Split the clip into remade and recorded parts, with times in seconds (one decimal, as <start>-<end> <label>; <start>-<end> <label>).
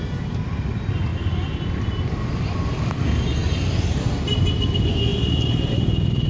0.0-6.3 recorded